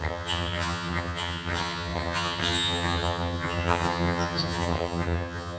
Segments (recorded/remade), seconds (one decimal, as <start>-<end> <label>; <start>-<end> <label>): 0.0-5.6 remade